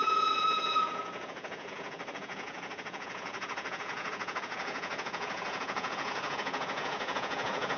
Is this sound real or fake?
fake